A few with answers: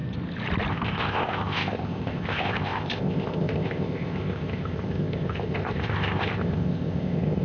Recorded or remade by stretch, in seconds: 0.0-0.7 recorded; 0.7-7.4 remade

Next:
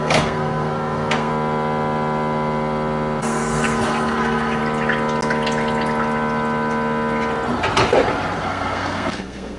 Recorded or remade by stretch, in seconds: 0.0-1.3 remade; 1.3-3.2 recorded; 3.2-4.6 remade; 4.6-8.4 recorded; 8.4-9.6 remade

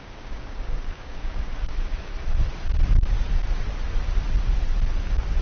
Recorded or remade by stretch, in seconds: 0.0-2.1 remade; 2.1-5.0 recorded; 5.0-5.4 remade

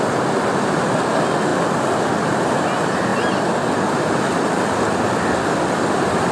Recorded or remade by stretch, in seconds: 0.0-6.3 recorded

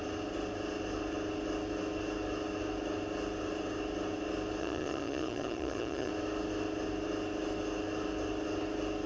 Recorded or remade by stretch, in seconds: 0.0-4.6 recorded; 4.6-6.1 remade; 6.1-9.1 recorded